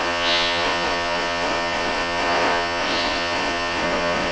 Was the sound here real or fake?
fake